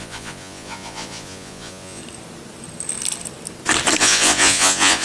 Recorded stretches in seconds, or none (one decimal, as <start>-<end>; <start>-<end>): 2.0-4.0